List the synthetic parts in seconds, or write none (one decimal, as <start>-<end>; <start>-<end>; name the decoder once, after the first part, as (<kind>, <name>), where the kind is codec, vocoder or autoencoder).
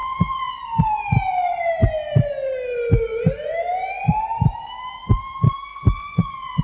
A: 0.0-0.6 (vocoder, Vocos); 5.7-6.6